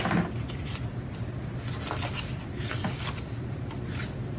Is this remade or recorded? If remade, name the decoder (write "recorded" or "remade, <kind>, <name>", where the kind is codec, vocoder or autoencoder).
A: recorded